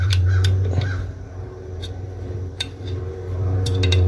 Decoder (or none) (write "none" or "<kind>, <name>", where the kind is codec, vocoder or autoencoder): vocoder, BigVGAN v2